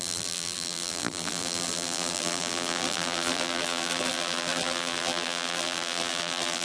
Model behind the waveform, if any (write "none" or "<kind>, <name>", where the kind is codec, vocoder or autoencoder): vocoder, BigVGAN v2